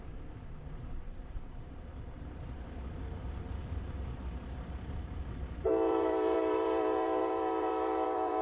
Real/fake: fake